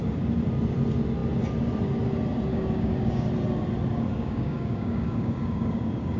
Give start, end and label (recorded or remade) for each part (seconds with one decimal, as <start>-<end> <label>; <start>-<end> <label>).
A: 0.0-2.5 recorded; 2.5-3.3 remade; 3.3-4.1 recorded; 4.1-6.2 remade

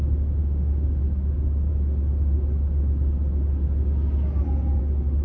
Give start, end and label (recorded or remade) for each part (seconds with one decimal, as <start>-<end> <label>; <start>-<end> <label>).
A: 0.0-0.4 recorded; 0.4-1.0 remade; 1.0-5.2 recorded

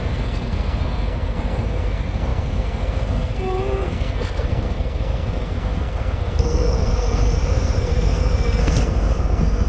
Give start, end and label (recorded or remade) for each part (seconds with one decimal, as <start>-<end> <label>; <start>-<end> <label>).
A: 0.0-9.7 remade